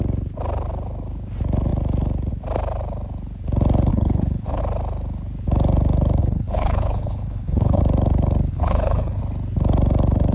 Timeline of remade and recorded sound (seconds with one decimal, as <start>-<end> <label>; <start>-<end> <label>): 0.0-3.9 recorded; 3.9-4.6 remade; 4.6-6.2 recorded; 6.2-7.8 remade; 7.8-8.5 recorded; 8.5-9.2 remade; 9.2-10.3 recorded